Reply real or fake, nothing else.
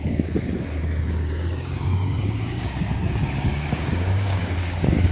fake